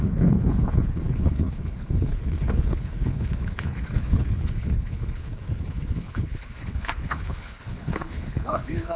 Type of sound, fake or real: fake